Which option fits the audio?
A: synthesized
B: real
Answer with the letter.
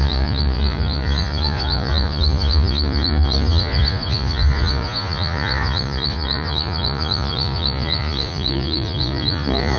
A